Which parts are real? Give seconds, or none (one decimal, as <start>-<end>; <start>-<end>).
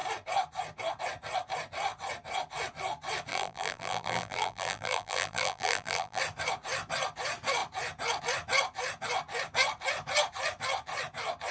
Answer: 0.0-3.3; 6.2-11.5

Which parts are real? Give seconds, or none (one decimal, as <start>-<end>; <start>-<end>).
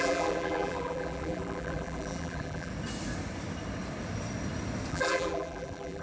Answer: 2.7-4.9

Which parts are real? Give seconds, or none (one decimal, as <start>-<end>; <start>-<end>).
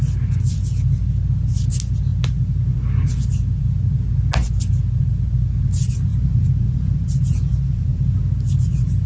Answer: 0.0-6.1; 8.2-9.1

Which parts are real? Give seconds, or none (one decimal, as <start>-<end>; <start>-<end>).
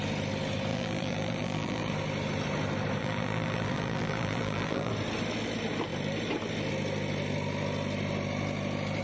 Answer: 0.0-0.7; 1.9-3.0; 4.9-9.0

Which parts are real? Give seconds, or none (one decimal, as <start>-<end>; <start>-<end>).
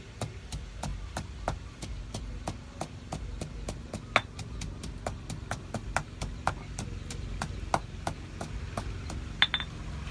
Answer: 0.0-10.1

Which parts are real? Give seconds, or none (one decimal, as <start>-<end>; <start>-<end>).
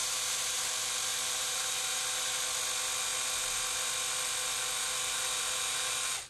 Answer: 0.6-1.1; 2.4-6.3